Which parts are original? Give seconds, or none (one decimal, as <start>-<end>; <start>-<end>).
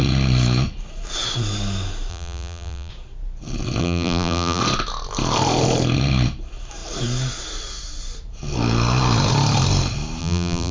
0.0-2.1; 2.9-3.8; 4.6-10.2